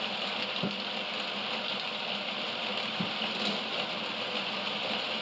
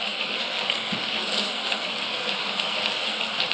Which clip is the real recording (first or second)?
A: first